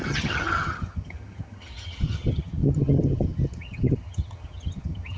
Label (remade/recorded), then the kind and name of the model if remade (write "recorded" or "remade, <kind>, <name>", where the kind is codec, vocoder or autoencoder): remade, vocoder, HiFi-GAN